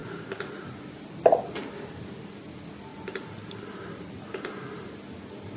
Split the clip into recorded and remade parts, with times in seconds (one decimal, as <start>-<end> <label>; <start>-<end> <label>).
0.0-2.9 recorded; 2.9-4.2 remade; 4.2-5.6 recorded